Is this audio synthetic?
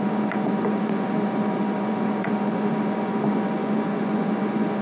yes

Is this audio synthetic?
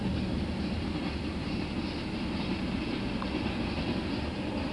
no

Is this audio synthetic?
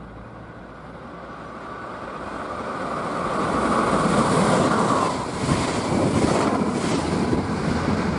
no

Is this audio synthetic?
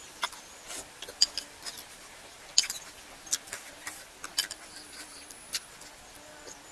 no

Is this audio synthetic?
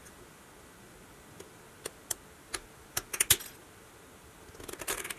no